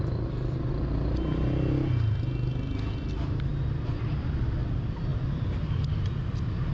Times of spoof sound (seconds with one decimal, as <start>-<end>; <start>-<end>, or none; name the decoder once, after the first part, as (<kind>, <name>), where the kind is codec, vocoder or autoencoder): none